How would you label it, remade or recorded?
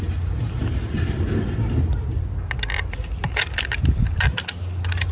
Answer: recorded